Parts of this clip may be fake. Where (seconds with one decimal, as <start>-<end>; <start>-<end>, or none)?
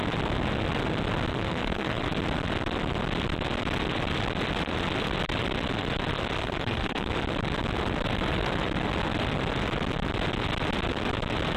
1.3-2.0; 6.4-7.1